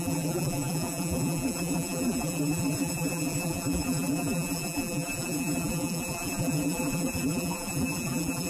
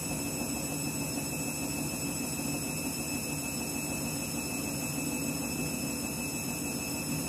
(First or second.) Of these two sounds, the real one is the second